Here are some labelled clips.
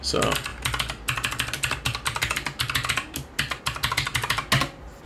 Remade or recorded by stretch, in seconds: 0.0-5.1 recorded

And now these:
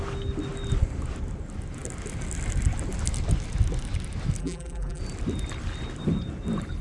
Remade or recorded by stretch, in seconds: 0.0-4.4 recorded; 4.4-5.0 remade; 5.0-6.8 recorded

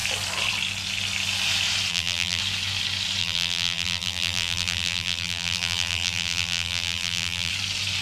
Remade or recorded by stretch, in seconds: 0.0-1.9 recorded; 1.9-2.4 remade; 2.4-3.2 recorded; 3.2-7.5 remade; 7.5-8.0 recorded

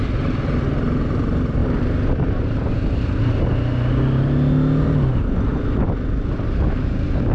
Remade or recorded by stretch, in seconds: 0.0-1.6 recorded; 1.6-3.3 remade; 3.3-5.5 recorded; 5.5-6.5 remade; 6.5-7.3 recorded